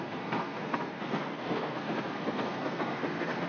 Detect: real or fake fake